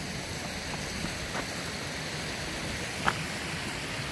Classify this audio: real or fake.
real